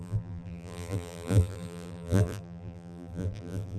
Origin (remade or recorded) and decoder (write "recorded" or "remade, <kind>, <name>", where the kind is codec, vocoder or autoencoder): remade, vocoder, BigVGAN v2